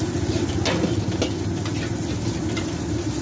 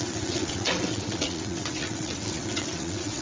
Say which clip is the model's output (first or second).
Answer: second